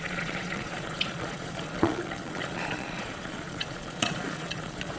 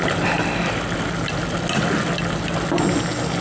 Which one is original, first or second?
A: second